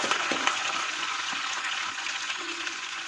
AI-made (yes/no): yes